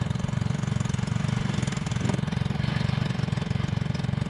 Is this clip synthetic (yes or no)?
no